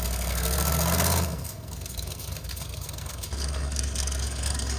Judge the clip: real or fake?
fake